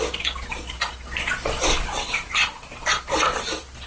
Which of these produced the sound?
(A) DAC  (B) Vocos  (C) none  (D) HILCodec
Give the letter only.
C